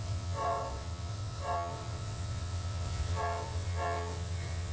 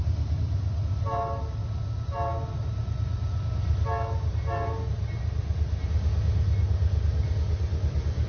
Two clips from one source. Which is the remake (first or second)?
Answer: first